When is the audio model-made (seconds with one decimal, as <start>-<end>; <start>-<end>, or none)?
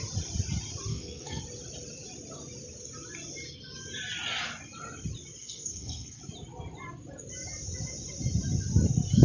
0.9-1.4; 5.4-6.2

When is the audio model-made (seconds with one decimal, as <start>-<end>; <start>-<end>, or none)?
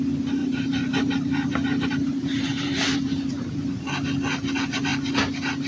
0.4-3.8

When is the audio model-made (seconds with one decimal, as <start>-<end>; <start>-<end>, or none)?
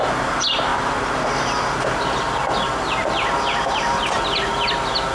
none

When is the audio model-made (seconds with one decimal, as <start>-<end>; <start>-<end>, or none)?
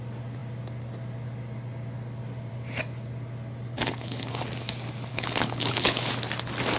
3.7-4.4; 5.1-6.1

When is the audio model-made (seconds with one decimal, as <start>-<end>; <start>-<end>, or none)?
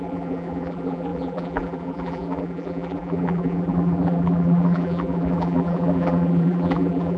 0.0-7.2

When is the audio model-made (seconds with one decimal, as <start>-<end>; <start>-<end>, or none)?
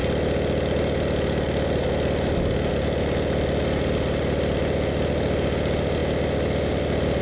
none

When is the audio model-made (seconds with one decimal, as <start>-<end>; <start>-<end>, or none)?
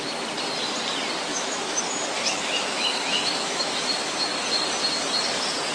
1.3-3.7